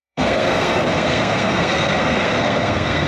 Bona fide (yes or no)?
no